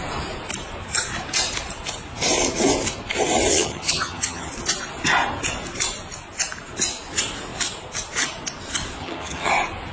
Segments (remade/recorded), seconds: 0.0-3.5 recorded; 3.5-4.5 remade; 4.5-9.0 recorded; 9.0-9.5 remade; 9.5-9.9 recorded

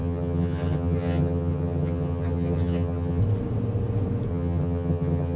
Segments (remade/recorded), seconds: 0.0-3.2 remade; 3.2-4.3 recorded; 4.3-5.4 remade

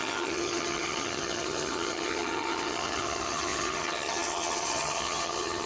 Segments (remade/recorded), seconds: 0.0-5.7 remade

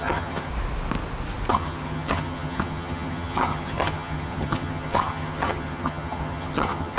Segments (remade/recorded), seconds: 0.0-0.5 remade; 0.5-1.5 recorded; 1.5-7.0 remade

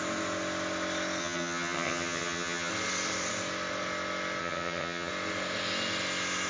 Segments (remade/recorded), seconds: 0.0-1.2 recorded; 1.2-2.7 remade; 2.7-4.4 recorded; 4.4-5.1 remade; 5.1-6.5 recorded

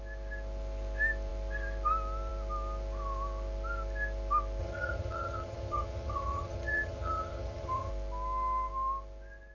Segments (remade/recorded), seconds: 0.0-4.6 recorded; 4.6-7.9 remade; 7.9-9.5 recorded

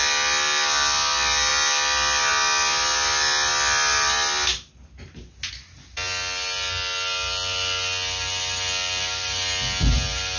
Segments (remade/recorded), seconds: 0.0-10.4 recorded